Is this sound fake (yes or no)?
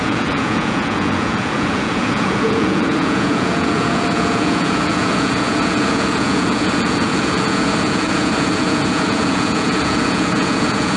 yes